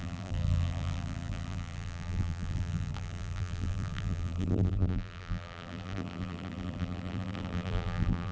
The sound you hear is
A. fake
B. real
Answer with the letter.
A